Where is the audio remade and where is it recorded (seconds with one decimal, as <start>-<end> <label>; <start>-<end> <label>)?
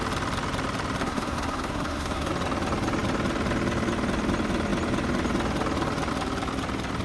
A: 0.0-1.0 recorded; 1.0-2.3 remade; 2.3-7.0 recorded